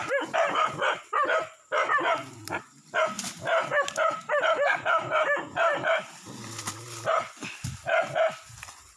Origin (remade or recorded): recorded